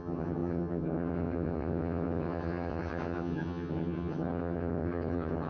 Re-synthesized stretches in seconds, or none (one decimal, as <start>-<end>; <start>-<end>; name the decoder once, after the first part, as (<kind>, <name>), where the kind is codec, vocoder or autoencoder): 0.0-5.5 (vocoder, HiFi-GAN)